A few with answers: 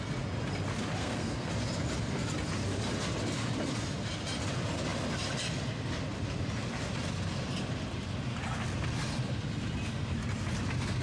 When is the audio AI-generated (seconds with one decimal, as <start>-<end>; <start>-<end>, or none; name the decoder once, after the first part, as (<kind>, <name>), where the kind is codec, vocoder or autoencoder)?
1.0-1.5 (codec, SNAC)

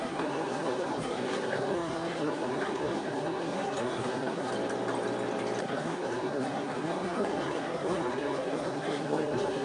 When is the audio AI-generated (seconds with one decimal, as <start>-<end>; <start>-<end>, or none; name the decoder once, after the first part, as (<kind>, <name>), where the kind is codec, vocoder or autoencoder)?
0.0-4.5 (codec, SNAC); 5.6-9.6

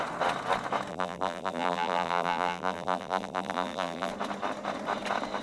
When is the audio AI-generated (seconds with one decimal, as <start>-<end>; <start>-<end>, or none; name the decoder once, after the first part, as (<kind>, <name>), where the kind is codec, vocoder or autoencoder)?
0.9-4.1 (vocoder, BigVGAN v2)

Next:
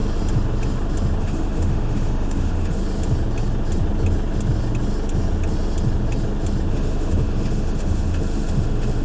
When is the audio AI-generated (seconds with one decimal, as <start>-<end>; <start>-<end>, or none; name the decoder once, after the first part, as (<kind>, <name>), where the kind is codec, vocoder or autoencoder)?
1.2-2.8 (autoencoder, DAC-VAE); 6.7-9.0

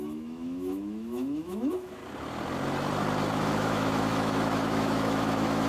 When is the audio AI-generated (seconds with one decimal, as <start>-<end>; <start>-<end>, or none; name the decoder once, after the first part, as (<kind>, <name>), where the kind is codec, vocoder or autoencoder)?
0.0-2.0 (autoencoder, DAC-VAE); 3.3-5.7

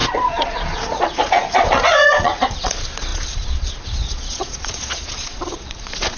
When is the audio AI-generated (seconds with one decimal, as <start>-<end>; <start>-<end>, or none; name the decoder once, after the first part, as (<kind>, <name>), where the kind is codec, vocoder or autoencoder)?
0.0-6.2 (vocoder, Vocos)